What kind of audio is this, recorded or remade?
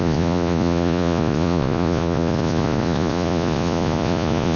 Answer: remade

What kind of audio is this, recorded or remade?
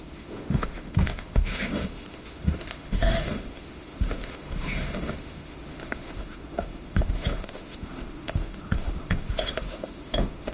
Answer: remade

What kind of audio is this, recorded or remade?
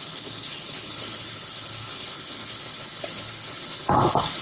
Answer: remade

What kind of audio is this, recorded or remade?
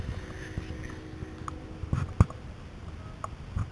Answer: recorded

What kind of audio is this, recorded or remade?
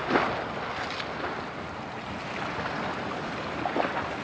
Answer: recorded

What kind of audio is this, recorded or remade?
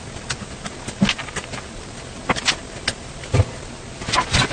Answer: recorded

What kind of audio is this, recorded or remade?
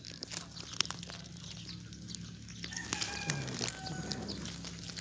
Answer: recorded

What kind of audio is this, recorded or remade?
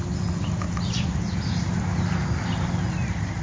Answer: recorded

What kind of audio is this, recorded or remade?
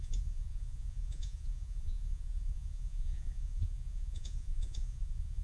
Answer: remade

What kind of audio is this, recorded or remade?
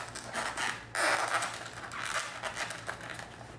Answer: recorded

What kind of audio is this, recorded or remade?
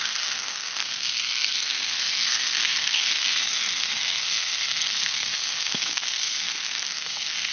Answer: remade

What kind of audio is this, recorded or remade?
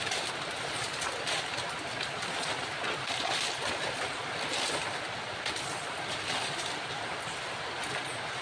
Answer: recorded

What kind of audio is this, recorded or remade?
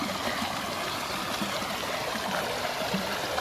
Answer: recorded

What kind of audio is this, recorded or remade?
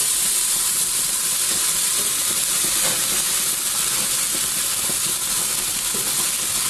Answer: recorded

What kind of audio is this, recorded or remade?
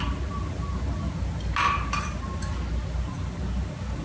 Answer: recorded